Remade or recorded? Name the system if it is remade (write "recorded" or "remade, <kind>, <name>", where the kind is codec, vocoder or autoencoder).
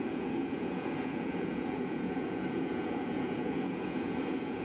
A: remade, vocoder, Vocos